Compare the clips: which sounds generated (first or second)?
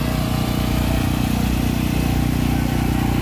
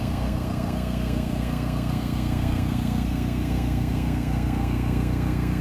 second